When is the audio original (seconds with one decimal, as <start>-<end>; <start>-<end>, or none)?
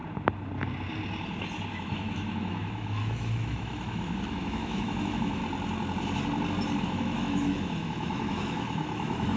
0.0-1.7; 5.4-6.8